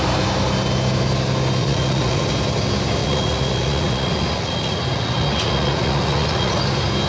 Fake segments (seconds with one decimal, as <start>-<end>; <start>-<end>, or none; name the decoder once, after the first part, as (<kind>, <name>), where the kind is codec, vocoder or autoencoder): 1.6-2.2 (vocoder, Vocos); 3.0-6.6